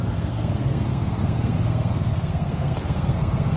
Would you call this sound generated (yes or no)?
yes